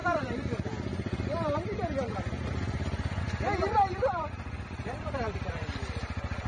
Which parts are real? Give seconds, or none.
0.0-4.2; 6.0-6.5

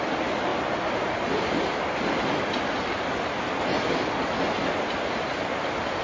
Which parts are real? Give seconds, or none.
0.0-6.0

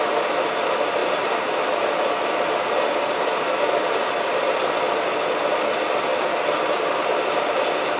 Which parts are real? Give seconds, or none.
0.0-6.1; 7.6-8.0

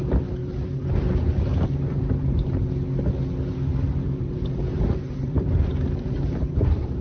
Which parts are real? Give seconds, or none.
0.0-3.7

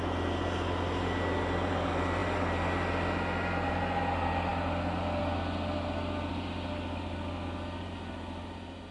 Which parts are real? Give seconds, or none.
0.0-8.9